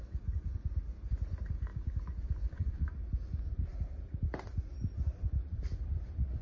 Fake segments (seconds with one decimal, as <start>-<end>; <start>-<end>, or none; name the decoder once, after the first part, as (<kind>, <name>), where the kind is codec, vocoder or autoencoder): 1.7-2.7 (vocoder, BigVGAN v2); 3.7-5.7

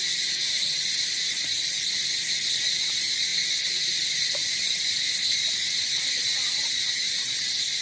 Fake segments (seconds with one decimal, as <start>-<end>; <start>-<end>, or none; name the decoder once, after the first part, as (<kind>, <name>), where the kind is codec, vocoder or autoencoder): none

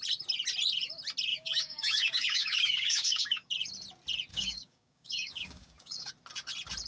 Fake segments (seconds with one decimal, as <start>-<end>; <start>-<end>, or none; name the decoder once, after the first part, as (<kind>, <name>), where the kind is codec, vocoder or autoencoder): 1.3-3.5 (codec, DAC); 4.3-6.1

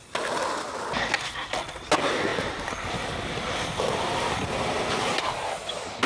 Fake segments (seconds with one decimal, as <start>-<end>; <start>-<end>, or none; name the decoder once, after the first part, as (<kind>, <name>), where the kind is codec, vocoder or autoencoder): none